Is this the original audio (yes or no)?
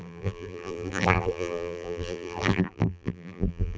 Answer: no